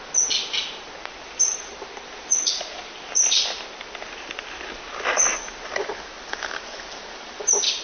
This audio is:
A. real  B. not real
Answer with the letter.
A